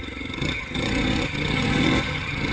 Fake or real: fake